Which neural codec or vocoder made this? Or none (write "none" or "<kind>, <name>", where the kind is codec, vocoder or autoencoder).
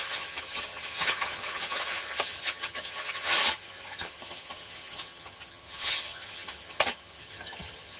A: vocoder, HiFi-GAN